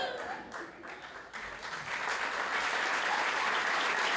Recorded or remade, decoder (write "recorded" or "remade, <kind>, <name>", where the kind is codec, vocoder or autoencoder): recorded